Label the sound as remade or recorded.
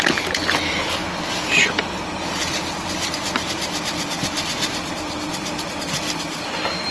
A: recorded